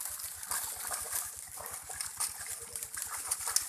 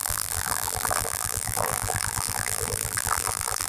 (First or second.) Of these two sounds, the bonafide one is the first